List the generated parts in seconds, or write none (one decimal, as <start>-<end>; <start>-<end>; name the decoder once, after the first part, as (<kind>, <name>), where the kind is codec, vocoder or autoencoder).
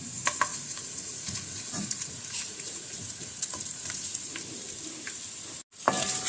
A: 0.5-4.3 (vocoder, Vocos)